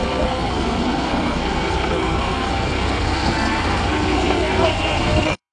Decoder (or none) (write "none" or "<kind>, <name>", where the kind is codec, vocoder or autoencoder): codec, SNAC